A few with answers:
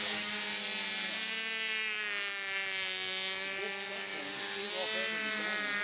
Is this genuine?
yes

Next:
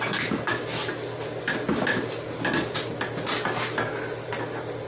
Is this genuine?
yes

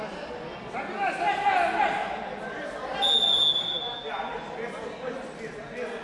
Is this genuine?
yes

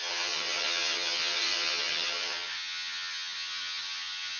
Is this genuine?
no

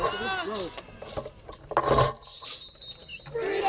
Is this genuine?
yes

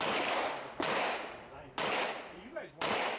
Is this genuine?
yes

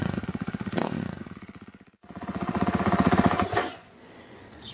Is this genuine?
no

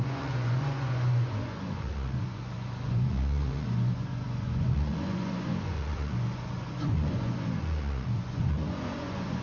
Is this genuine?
no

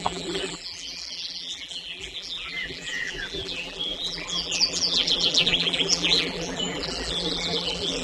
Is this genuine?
no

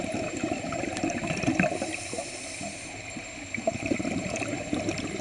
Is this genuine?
no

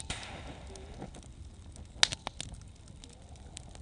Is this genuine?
yes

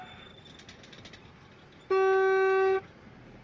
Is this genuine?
yes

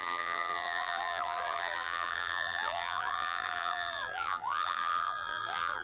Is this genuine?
no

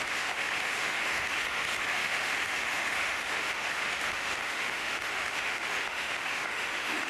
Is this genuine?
no